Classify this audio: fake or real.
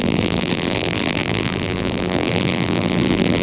fake